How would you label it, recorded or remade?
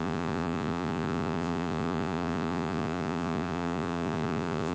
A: remade